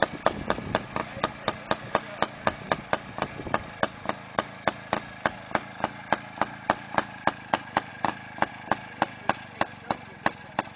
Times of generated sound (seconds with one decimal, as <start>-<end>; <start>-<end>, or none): none